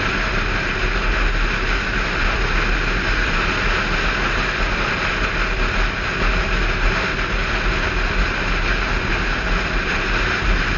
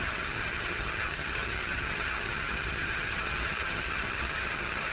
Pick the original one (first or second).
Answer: first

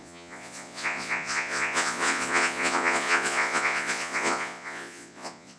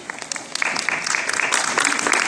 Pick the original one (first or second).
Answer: second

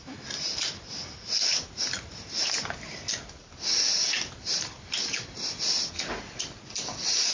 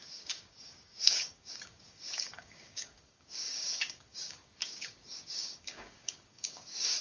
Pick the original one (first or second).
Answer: first